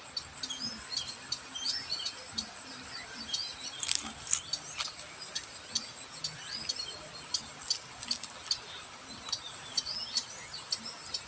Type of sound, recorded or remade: recorded